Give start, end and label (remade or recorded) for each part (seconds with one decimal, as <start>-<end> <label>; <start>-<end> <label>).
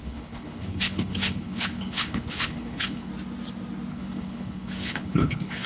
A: 0.0-3.1 remade; 3.1-3.9 recorded; 3.9-5.7 remade